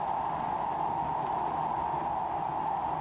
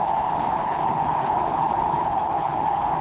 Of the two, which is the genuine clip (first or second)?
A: first